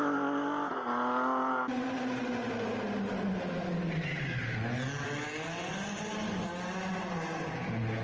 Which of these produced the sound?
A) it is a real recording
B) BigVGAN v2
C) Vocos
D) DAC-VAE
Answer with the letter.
A